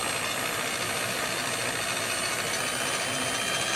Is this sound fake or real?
real